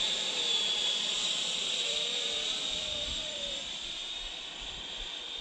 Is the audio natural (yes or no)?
no